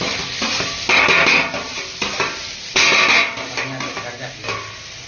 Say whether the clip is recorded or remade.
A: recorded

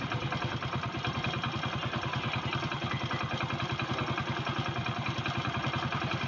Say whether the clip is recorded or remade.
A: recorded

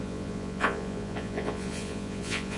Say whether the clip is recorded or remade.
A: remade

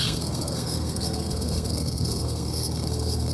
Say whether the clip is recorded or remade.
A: remade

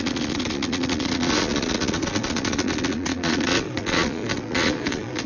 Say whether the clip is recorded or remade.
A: remade